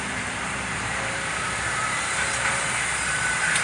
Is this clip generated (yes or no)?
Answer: yes